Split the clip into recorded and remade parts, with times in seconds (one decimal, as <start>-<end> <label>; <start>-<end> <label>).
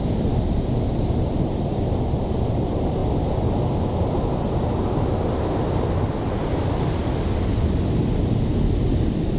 0.0-9.4 recorded